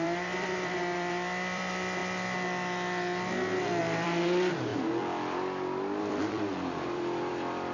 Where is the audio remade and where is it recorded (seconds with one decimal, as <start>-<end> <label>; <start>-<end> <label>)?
0.0-2.0 remade; 2.0-3.8 recorded; 3.8-4.7 remade; 4.7-6.0 recorded; 6.0-7.7 remade